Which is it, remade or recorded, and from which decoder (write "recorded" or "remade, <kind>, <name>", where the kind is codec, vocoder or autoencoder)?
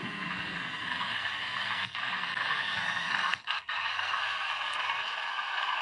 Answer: remade, codec, SNAC